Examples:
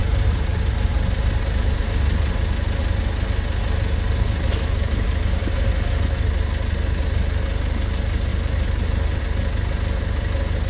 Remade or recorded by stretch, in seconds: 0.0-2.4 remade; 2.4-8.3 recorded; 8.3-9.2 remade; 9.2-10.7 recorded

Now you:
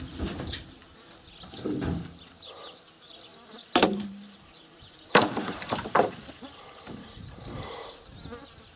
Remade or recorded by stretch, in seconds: 0.0-3.3 recorded; 3.3-7.9 remade; 7.9-8.8 recorded

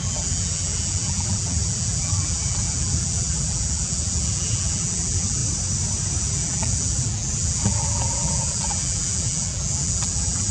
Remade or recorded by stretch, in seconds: 0.0-5.4 remade; 5.4-6.2 recorded; 6.2-10.5 remade

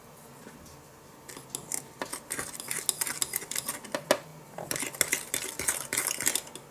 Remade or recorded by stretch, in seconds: 0.0-6.7 recorded

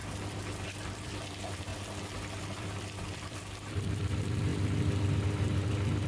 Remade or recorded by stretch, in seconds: 0.0-1.7 remade; 1.7-2.4 recorded; 2.4-6.1 remade